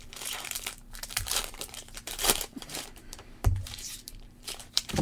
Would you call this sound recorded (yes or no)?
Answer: no